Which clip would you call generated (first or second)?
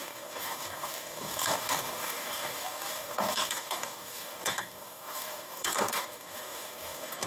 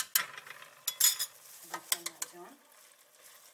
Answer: first